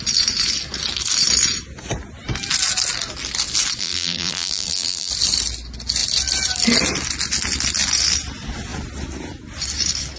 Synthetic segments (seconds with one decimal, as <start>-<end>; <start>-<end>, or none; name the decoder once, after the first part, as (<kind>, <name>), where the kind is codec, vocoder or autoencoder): 3.8-5.1 (vocoder, BigVGAN v2)